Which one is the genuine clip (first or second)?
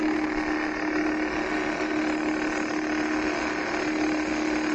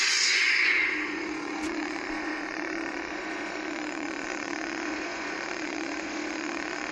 first